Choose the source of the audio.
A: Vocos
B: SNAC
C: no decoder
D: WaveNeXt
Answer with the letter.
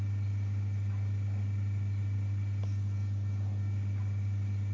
C